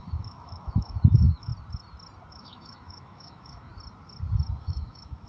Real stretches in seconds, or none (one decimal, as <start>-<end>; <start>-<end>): 1.5-2.3; 3.7-4.6